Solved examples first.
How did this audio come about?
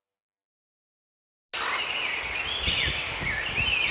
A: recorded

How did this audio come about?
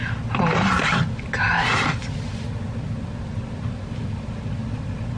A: recorded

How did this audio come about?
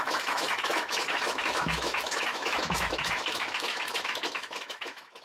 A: remade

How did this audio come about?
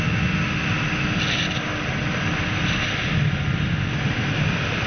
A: recorded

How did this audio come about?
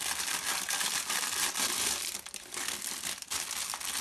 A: recorded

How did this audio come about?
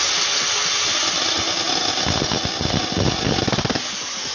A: recorded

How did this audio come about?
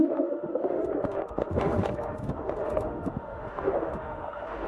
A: remade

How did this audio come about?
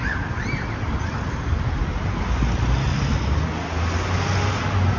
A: recorded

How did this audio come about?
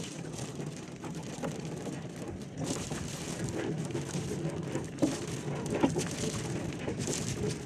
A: recorded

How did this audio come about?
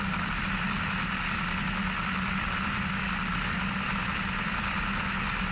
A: recorded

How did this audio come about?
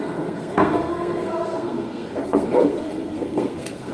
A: remade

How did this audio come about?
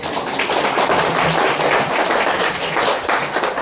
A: recorded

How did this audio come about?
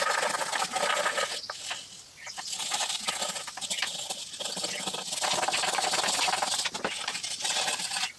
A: recorded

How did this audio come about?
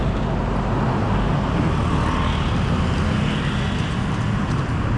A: recorded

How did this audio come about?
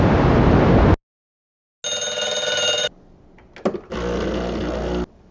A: recorded